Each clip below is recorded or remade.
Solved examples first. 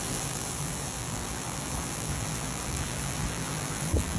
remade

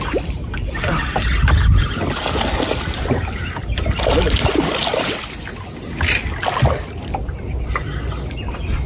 recorded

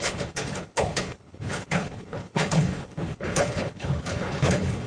remade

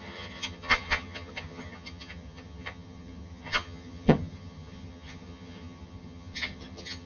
remade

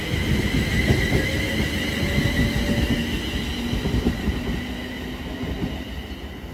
recorded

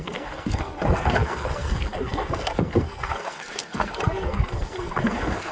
remade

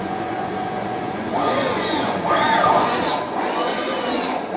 remade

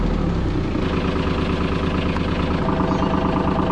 recorded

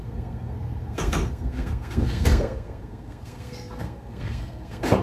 remade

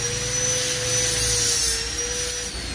recorded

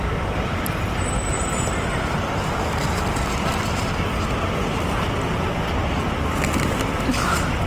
recorded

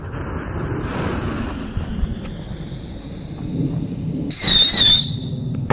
remade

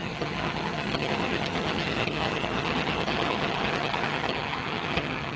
remade